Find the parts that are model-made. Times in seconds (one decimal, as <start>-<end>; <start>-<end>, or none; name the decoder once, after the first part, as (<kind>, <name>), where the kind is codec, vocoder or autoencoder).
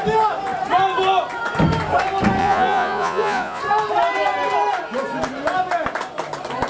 2.4-3.6 (vocoder, Vocos)